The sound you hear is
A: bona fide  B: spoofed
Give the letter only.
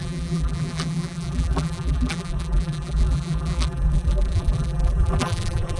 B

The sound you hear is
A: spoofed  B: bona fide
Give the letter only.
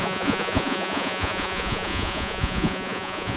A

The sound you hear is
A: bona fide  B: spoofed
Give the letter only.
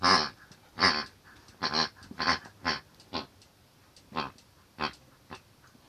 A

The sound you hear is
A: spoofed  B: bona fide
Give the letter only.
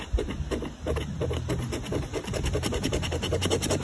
B